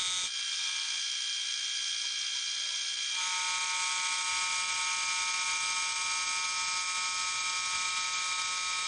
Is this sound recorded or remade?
recorded